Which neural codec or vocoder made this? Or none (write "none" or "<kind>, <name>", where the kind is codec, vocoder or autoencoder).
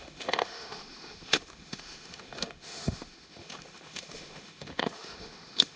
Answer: autoencoder, DAC-VAE